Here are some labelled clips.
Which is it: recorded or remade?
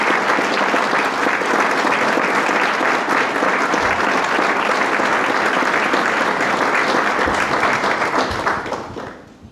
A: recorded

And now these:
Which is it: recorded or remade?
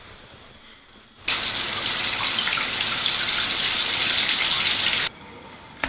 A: recorded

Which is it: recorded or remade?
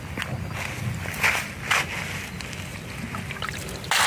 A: recorded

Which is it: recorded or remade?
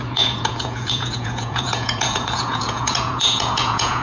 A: remade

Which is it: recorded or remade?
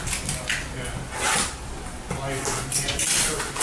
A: recorded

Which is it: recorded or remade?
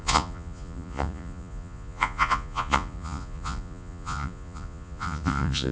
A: remade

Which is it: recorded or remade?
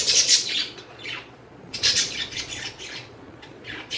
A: remade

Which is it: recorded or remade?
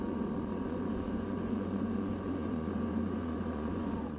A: remade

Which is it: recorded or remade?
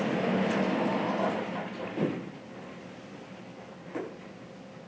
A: recorded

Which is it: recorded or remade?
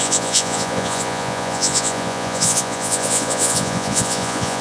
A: remade